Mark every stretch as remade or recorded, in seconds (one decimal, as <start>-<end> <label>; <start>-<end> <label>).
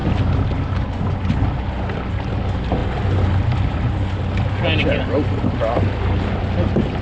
0.0-7.0 recorded